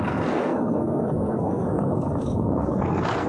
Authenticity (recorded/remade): remade